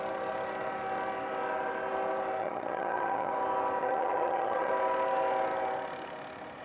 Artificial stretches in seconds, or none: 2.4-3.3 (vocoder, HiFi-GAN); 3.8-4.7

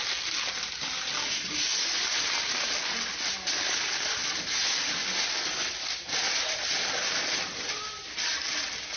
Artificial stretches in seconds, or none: none

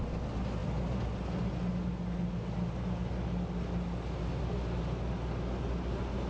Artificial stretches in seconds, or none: none

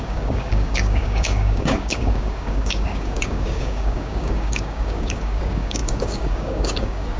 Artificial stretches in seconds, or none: 0.0-7.2 (codec, DAC)

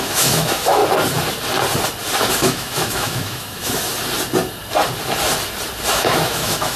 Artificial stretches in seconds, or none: 0.0-0.8 (autoencoder, DAC-VAE); 2.3-3.9; 5.9-6.8

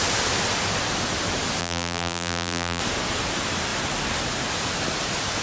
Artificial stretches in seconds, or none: 1.6-2.8 (vocoder, BigVGAN v2)

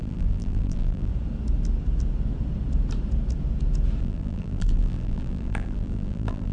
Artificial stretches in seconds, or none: 0.0-1.1 (vocoder, BigVGAN v2); 4.0-6.5

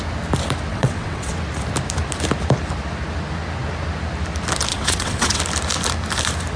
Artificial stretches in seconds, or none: 0.7-1.3 (vocoder, WaveNeXt); 4.7-5.4